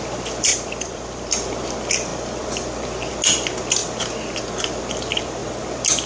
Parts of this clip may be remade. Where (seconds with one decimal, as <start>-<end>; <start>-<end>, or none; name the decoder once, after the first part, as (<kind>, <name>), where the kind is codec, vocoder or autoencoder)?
0.5-1.3 (vocoder, BigVGAN v2); 2.1-3.1; 3.8-4.4